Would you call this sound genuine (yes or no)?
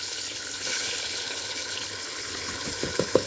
no